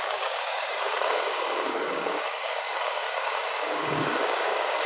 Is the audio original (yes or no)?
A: no